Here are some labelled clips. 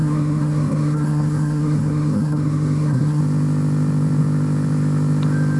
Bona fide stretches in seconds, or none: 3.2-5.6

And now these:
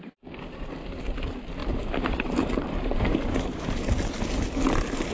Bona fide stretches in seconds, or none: 0.0-1.6; 3.9-5.1

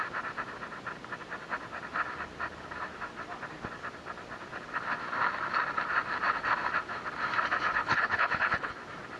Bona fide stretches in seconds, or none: 0.0-7.8; 8.7-9.2

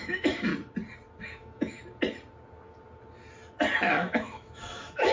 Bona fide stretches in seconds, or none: 0.5-1.2; 1.8-3.9

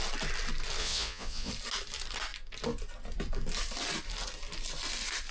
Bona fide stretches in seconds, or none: 0.0-0.8; 1.5-5.3

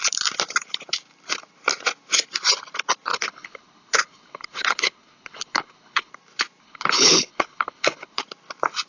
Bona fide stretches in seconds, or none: 0.0-3.1; 6.1-6.6; 8.2-8.9

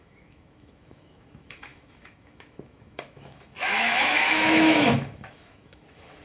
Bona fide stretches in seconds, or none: none

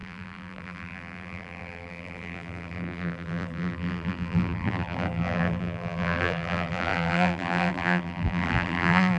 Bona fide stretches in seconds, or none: none